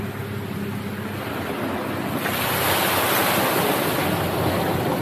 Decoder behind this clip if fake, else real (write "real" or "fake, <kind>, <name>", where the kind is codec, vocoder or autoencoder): real